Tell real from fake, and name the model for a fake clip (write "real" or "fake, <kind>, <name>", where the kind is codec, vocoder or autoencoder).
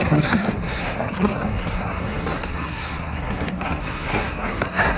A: fake, codec, SNAC